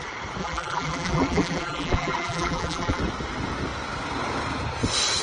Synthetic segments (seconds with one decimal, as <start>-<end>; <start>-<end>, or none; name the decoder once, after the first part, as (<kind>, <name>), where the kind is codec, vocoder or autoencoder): 0.4-3.0 (vocoder, BigVGAN v2)